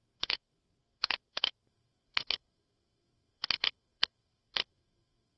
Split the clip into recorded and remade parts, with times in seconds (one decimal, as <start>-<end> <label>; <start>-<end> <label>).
0.0-5.4 remade